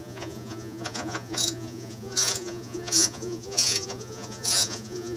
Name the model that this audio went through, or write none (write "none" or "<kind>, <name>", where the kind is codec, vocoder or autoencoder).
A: vocoder, Vocos